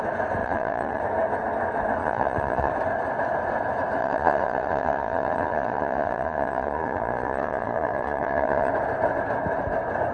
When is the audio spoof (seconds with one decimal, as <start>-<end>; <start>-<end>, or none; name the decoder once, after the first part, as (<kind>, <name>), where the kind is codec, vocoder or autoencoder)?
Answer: 0.4-1.0 (vocoder, Vocos); 2.0-2.7; 4.0-8.7